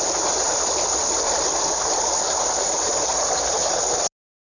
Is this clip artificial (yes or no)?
no